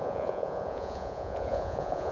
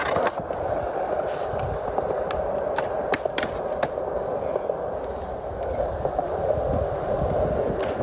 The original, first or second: second